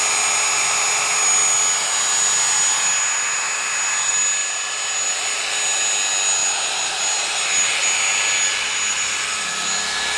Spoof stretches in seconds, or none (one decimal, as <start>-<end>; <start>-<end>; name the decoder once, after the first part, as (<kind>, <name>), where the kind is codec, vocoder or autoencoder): none